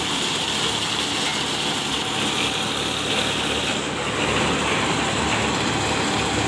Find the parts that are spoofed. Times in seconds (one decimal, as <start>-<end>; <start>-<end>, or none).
none